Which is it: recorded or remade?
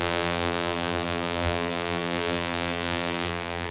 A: remade